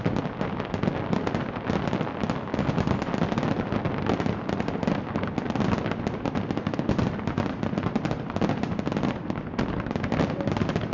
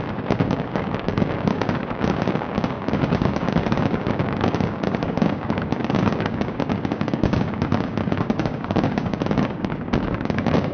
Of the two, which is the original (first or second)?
first